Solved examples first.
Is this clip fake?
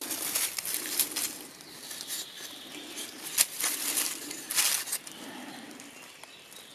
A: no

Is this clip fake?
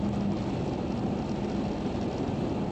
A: no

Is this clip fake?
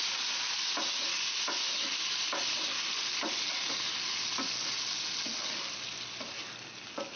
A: no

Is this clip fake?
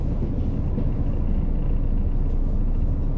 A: no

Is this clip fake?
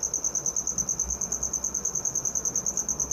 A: no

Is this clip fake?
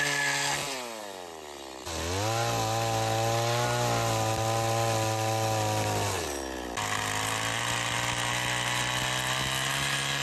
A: no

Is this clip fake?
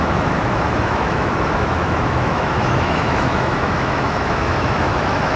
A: yes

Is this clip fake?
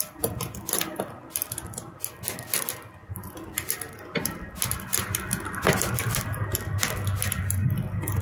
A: no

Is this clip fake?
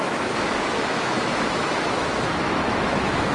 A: yes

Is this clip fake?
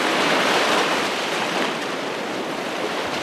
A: no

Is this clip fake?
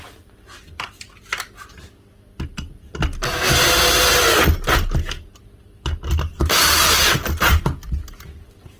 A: no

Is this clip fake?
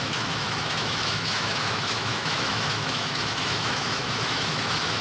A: yes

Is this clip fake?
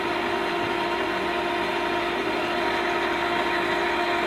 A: no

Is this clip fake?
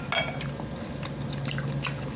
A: no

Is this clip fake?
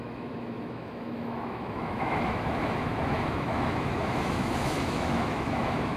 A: yes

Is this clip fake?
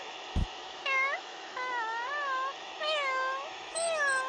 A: yes